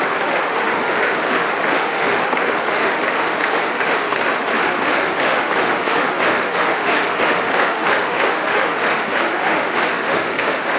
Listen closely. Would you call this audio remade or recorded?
remade